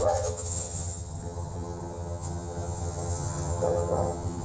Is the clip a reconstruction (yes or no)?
yes